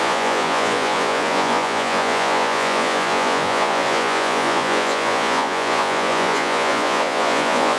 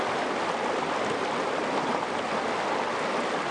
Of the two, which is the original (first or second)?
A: second